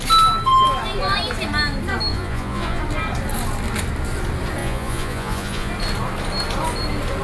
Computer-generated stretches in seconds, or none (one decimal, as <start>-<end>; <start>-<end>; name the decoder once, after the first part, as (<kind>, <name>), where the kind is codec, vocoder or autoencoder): 2.1-2.8 (vocoder, Vocos); 4.6-5.7